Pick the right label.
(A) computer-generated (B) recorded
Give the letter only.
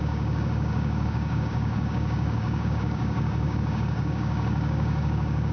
A